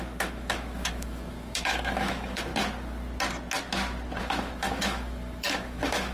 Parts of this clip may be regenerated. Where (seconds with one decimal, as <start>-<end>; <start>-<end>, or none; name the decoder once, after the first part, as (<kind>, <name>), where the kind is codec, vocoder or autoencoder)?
0.0-2.5 (autoencoder, DAC-VAE); 4.2-6.1